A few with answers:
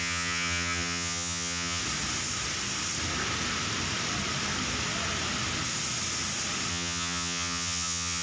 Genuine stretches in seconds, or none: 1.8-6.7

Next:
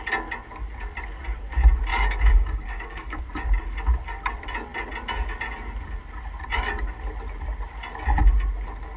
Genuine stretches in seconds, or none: 0.0-1.9; 3.2-9.0